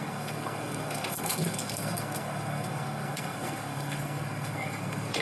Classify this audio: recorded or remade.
remade